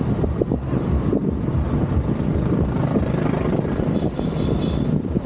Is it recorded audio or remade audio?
recorded